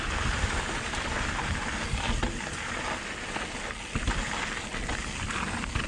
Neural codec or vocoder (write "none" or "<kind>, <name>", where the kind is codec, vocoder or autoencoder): none